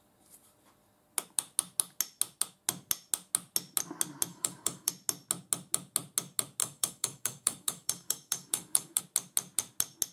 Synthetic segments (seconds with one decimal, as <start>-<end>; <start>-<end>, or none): 4.3-4.9; 6.6-9.0

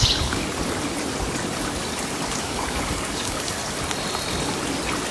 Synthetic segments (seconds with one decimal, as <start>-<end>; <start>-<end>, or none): 0.0-0.4; 2.3-3.6